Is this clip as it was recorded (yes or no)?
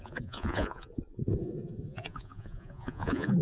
no